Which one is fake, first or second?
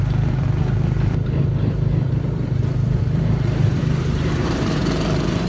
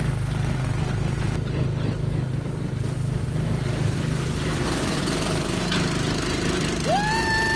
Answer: first